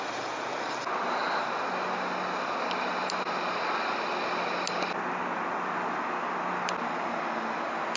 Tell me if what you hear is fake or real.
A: real